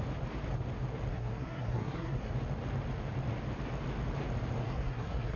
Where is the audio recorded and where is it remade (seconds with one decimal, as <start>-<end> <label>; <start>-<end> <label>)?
0.0-1.1 recorded; 1.1-2.3 remade; 2.3-4.6 recorded; 4.6-5.4 remade